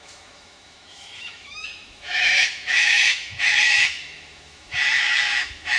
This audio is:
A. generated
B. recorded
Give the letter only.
A